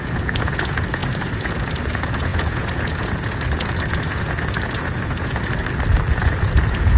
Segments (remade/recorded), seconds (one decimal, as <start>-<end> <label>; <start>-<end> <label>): 0.0-5.6 remade; 5.6-6.1 recorded; 6.1-7.0 remade